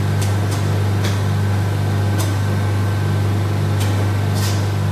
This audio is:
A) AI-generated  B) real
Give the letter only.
B